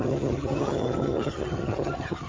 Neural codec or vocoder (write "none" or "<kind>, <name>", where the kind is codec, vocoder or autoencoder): vocoder, HiFi-GAN